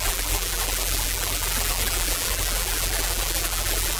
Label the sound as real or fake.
fake